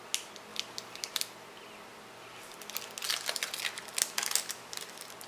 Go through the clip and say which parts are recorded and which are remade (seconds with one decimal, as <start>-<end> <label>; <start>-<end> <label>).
0.0-5.3 recorded